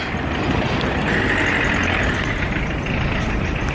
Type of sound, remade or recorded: recorded